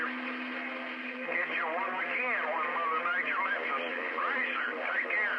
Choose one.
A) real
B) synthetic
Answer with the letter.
A